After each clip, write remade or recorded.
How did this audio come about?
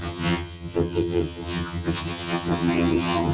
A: remade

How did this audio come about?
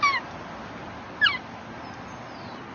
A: recorded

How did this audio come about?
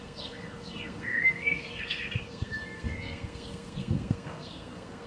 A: remade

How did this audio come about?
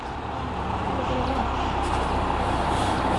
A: recorded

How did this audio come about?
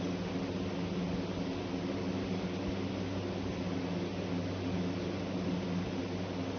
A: recorded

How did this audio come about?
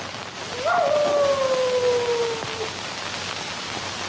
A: recorded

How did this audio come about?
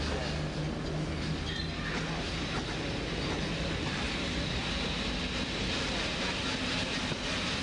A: recorded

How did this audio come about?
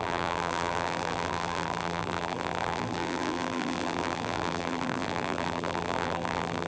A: remade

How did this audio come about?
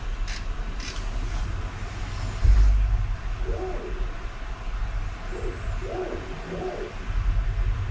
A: recorded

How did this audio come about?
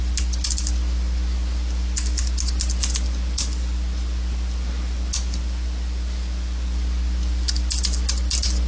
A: recorded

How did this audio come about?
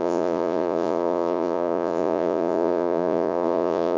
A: remade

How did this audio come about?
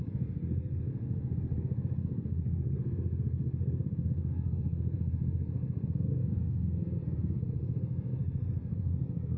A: remade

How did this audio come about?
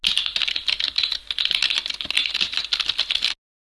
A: recorded